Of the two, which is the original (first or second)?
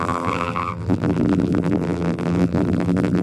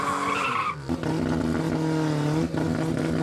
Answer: second